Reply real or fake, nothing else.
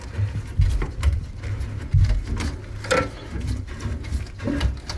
real